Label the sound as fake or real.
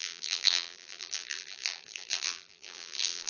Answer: fake